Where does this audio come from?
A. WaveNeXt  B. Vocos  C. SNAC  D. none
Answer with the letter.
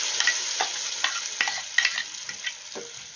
D